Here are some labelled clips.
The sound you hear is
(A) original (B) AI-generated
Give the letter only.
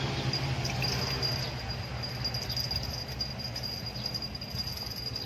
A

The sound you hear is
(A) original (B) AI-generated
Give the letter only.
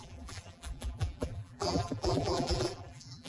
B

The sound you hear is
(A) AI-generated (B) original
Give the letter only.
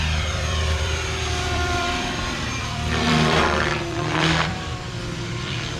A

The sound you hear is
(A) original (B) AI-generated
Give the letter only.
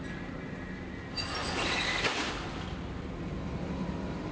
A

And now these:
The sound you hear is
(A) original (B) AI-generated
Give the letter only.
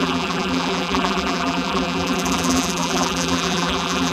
B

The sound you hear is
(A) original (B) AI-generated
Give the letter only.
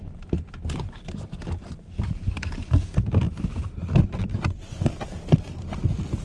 A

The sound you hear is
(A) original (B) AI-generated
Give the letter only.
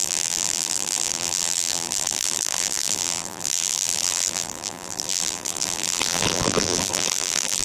B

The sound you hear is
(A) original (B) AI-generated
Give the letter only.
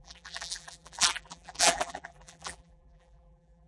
B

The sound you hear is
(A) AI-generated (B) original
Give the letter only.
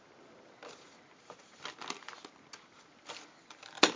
B